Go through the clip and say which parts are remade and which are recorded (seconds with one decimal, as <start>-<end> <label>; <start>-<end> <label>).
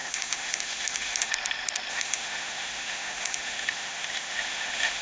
0.0-1.3 remade; 1.3-1.9 recorded; 1.9-5.0 remade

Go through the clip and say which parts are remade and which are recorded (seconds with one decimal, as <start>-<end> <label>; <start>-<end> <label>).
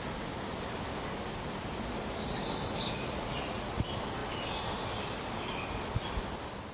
0.0-3.0 recorded; 3.0-3.8 remade; 3.8-6.7 recorded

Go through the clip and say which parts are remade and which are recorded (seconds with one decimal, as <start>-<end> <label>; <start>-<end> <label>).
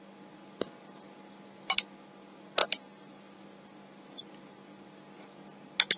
0.0-2.6 recorded; 2.6-3.1 remade; 3.1-6.0 recorded